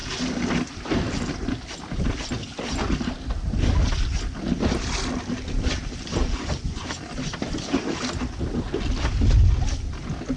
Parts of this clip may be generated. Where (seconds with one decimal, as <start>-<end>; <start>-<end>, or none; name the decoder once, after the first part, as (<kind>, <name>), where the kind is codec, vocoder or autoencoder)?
6.2-7.1 (vocoder, Vocos)